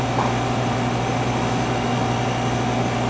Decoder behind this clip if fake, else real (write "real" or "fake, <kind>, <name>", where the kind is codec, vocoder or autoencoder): real